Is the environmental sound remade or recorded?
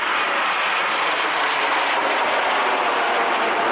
recorded